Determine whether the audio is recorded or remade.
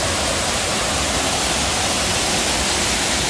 recorded